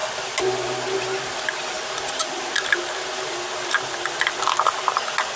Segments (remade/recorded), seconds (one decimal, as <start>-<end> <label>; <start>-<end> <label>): 0.0-5.4 recorded